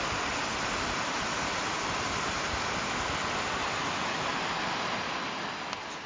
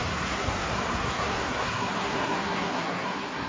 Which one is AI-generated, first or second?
second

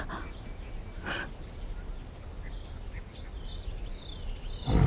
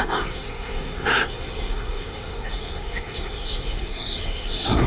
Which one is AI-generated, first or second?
second